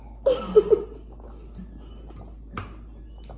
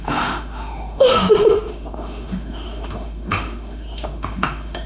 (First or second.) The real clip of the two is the first